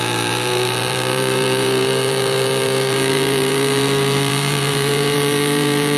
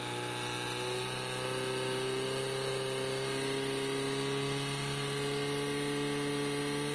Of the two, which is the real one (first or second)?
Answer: second